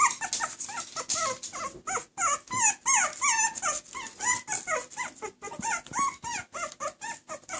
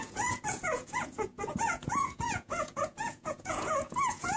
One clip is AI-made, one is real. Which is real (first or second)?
first